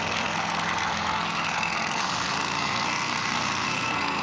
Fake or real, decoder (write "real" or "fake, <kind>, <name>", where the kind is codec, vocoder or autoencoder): fake, codec, SNAC